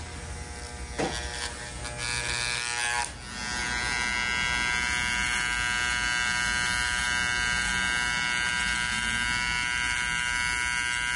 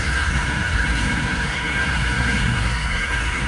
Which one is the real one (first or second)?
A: first